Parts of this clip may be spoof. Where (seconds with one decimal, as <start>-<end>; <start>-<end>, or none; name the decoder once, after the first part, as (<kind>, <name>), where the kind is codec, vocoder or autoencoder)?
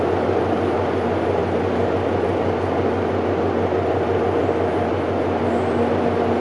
none